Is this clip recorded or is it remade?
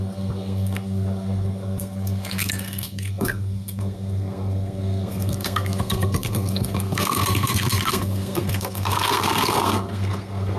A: remade